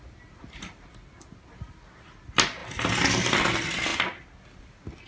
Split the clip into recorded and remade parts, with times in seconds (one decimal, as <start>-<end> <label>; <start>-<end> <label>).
0.0-5.1 recorded